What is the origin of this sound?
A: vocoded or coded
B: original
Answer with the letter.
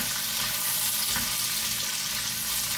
B